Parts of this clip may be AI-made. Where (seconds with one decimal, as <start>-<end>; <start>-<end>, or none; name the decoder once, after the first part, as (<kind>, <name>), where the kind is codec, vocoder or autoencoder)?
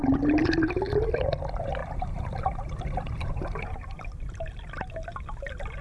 0.0-0.9 (vocoder, BigVGAN v2); 1.8-4.7